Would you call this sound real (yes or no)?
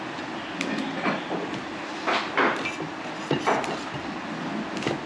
yes